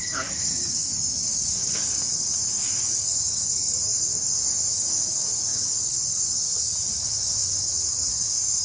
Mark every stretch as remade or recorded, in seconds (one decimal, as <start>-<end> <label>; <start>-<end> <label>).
0.0-8.6 remade